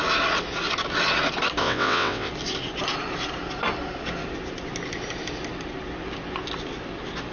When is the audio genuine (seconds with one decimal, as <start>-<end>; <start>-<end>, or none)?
0.0-1.6; 2.3-7.3